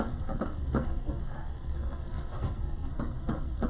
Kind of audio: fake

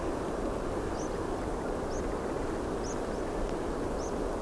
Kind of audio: real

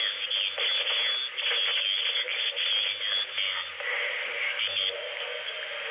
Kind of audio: real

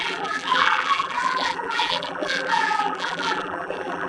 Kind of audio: fake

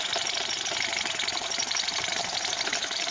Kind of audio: fake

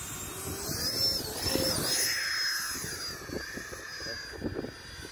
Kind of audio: real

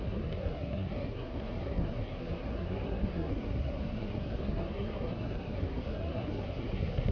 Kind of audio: fake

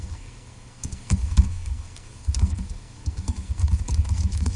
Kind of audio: fake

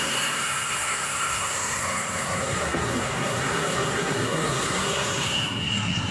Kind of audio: fake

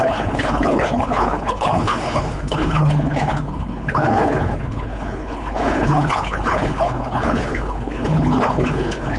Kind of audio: fake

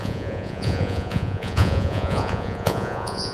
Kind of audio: fake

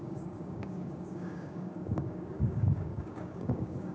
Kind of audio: fake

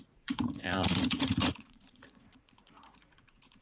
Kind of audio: fake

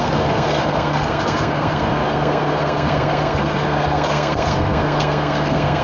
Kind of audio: fake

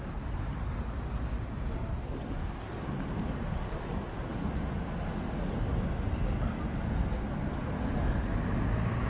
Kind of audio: real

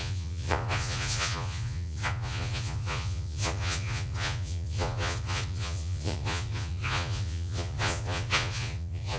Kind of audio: fake